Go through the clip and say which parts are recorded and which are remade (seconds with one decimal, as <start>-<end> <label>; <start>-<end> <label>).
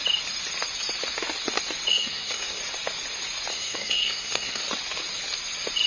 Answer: 0.0-1.9 recorded; 1.9-2.6 remade; 2.6-3.5 recorded; 3.5-4.6 remade; 4.6-5.9 recorded